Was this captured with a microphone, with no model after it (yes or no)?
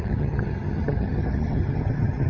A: no